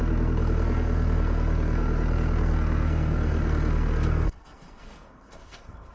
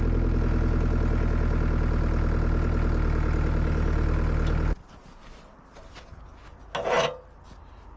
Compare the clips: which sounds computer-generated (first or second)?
first